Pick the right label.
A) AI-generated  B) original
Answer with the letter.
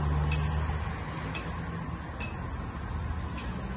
B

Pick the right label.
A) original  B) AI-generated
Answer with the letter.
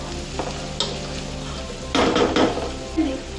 A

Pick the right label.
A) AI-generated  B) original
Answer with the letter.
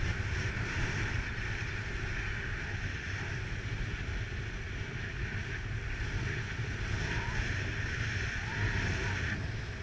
B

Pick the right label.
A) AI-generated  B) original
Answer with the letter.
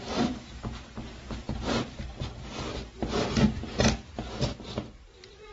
B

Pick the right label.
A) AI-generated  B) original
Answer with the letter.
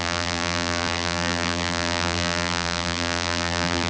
A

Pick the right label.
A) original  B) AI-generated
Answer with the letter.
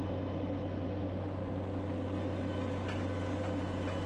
A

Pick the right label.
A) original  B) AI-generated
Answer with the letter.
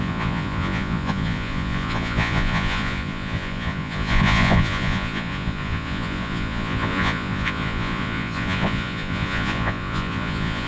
B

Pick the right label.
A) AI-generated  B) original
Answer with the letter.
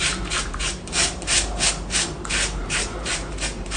A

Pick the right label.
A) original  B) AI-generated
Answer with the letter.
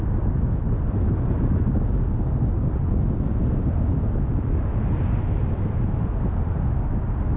A